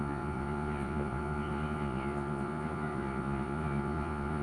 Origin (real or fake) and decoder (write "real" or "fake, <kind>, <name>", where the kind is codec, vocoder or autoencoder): fake, vocoder, Vocos